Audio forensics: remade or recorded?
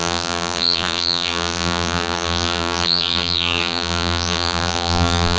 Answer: remade